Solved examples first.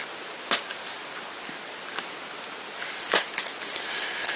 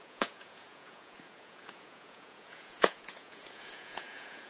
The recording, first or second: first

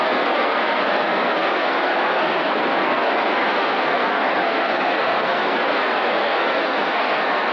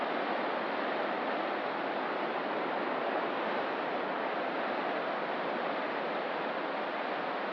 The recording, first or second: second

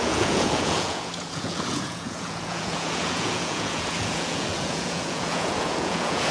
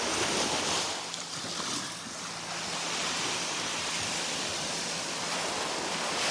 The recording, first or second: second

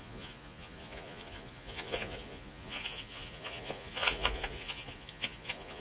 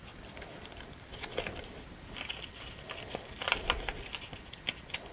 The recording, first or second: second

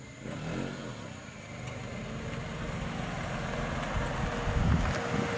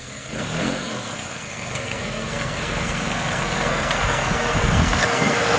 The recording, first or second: first